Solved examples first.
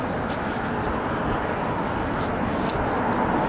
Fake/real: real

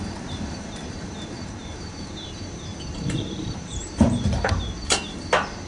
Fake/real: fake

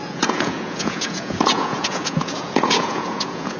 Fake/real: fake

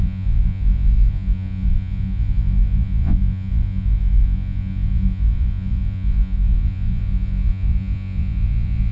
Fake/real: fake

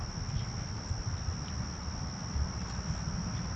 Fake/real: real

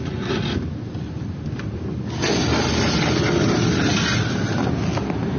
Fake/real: real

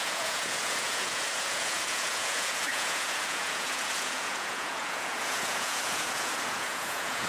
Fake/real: fake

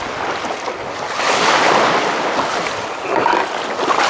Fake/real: real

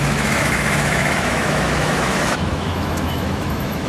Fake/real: fake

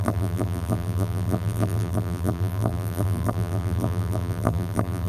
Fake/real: fake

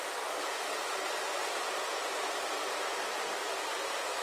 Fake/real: fake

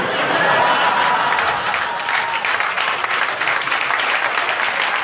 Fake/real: real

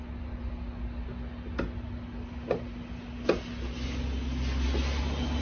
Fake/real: real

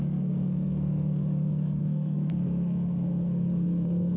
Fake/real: fake